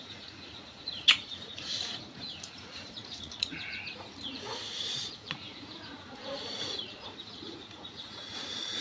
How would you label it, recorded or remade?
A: remade